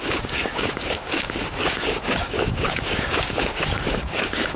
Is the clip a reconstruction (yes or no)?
yes